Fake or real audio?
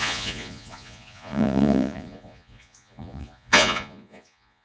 fake